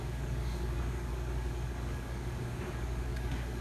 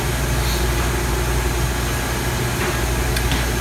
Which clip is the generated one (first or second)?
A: first